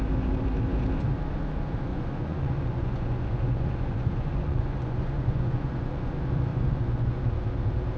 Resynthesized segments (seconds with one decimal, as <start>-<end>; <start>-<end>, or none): 1.9-6.1; 6.5-7.2